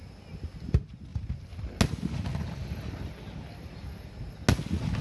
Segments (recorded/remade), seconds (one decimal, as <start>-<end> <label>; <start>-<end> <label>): 0.0-5.0 recorded